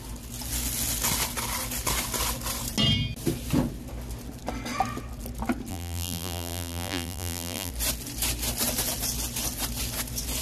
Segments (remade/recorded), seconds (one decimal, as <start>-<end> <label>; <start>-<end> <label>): 0.0-5.7 recorded; 5.7-7.7 remade; 7.7-10.4 recorded